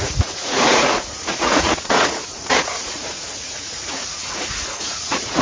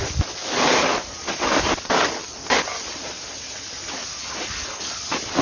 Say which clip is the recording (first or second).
second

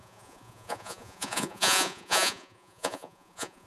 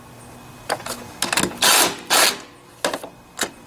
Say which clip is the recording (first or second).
second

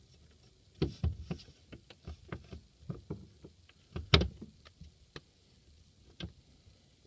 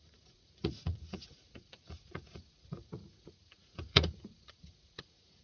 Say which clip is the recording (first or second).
first